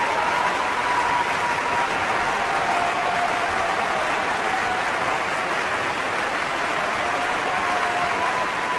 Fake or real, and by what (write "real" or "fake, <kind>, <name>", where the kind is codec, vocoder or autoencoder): real